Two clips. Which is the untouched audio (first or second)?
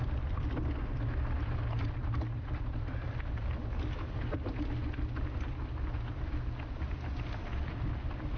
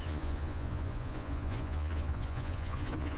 first